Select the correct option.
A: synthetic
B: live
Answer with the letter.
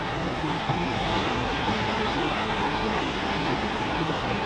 A